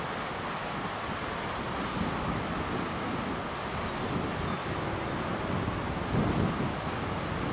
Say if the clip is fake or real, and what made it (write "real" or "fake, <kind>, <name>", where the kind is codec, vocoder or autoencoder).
real